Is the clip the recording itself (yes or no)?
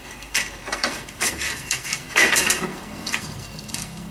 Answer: no